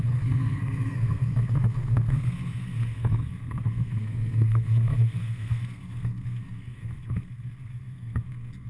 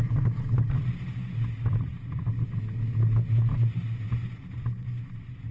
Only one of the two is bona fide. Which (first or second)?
second